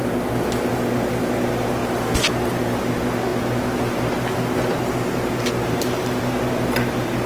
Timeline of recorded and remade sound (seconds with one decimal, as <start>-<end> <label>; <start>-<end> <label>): 0.0-7.3 recorded